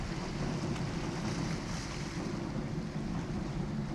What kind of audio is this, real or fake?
real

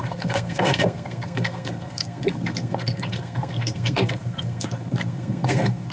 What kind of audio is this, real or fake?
fake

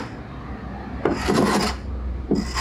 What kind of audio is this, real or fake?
real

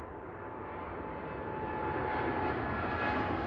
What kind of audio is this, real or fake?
real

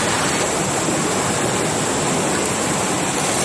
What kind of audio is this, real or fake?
real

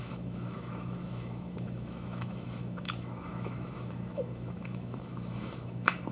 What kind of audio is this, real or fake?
fake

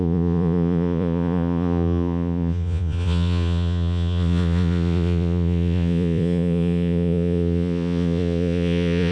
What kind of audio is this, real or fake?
fake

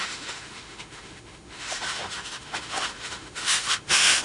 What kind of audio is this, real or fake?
fake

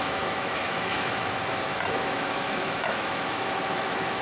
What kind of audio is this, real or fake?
fake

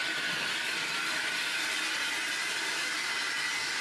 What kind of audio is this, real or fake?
real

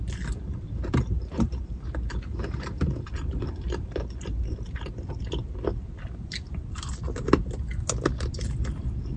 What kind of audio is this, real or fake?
fake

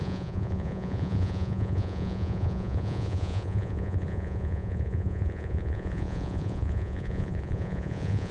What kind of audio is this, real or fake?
fake